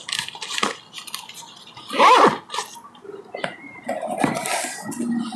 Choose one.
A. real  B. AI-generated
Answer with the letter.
A